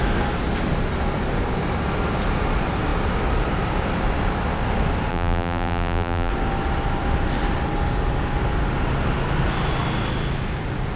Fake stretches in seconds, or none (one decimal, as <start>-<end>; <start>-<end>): 5.1-6.3